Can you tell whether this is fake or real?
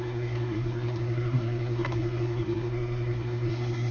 fake